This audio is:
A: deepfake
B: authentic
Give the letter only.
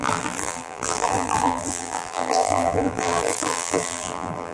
A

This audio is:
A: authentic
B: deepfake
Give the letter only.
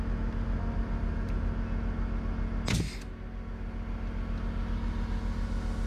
A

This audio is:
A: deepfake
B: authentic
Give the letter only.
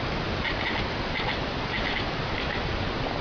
B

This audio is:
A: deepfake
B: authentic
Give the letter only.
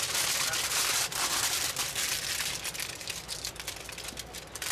B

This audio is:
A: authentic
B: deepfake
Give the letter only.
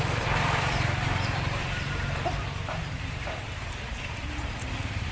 B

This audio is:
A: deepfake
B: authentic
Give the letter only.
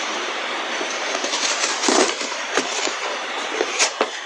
A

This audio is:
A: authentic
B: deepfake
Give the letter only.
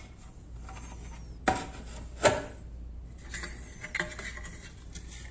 A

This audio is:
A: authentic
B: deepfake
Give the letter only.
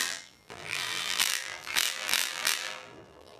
B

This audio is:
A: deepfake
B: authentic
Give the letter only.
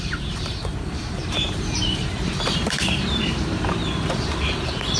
A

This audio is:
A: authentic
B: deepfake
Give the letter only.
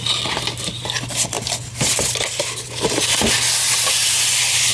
A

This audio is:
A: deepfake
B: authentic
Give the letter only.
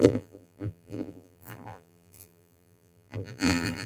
A